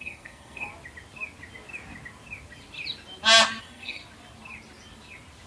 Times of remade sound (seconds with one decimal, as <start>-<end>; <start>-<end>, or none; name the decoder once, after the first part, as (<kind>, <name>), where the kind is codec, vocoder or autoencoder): 0.0-0.7 (codec, SNAC); 3.6-4.0